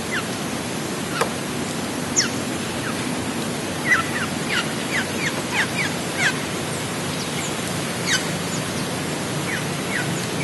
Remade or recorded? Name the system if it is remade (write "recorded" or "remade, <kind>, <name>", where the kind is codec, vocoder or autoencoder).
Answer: recorded